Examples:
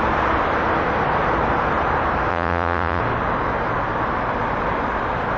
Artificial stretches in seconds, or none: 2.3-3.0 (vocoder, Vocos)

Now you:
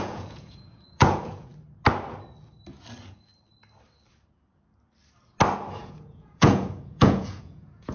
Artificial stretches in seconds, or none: 0.0-1.5 (vocoder, Vocos); 5.7-7.9

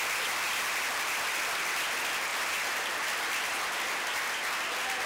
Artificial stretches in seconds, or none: none

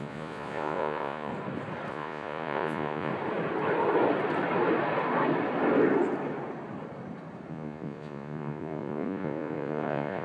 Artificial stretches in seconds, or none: 0.0-1.3 (vocoder, Vocos); 1.9-3.1; 7.5-10.2

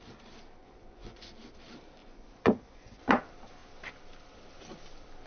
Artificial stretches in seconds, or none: 0.6-1.3 (vocoder, Vocos); 2.0-3.2

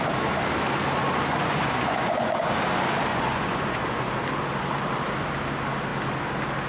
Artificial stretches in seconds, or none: 1.3-2.5 (vocoder, Vocos); 3.1-4.1